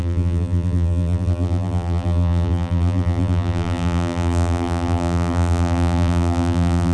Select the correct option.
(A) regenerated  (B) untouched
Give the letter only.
A